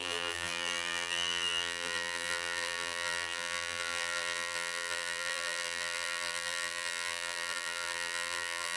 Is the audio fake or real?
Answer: fake